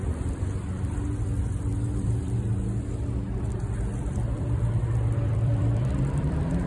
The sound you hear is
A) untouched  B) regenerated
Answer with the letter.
B